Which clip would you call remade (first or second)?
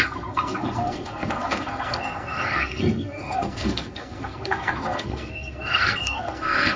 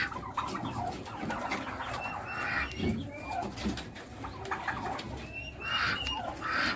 first